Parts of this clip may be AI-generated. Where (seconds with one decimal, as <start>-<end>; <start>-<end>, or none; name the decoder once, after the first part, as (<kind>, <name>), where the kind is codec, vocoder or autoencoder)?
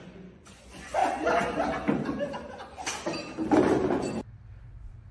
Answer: 0.0-1.0 (vocoder, Vocos); 2.5-2.9